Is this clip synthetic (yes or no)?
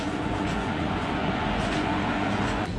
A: yes